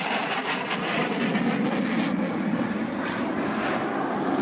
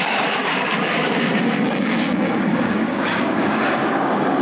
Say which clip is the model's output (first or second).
second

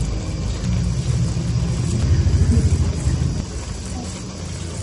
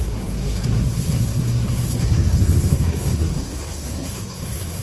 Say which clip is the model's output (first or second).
second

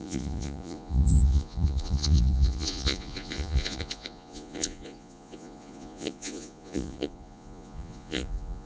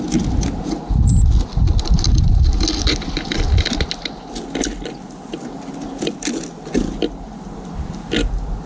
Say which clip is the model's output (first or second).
first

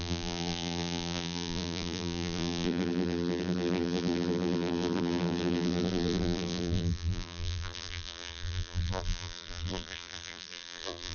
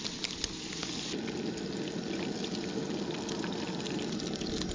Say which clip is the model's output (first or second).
first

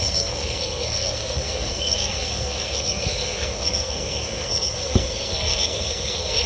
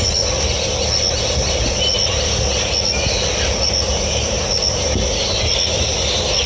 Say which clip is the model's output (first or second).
first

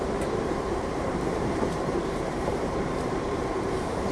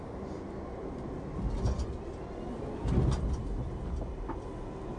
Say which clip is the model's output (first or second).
first